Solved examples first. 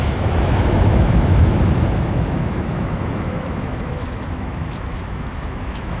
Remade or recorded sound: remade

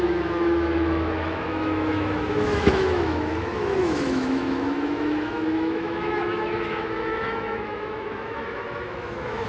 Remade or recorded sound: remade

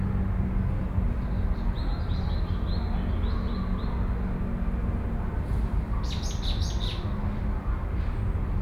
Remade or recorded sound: recorded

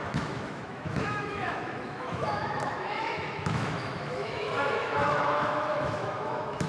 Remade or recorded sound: remade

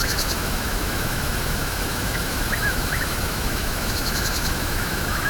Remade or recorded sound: remade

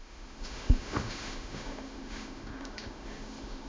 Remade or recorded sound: remade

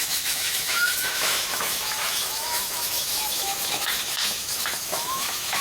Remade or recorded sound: remade